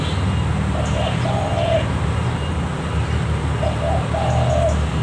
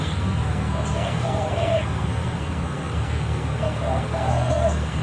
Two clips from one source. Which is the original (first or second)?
first